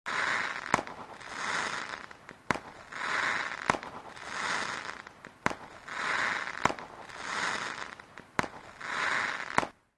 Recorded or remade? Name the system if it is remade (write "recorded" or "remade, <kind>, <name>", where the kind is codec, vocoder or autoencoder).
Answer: recorded